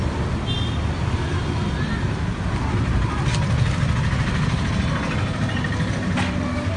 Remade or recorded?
recorded